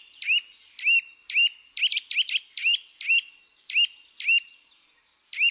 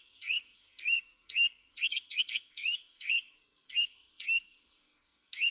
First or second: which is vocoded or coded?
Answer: second